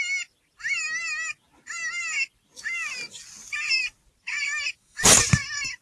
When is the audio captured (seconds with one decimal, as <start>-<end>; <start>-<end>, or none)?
0.0-3.4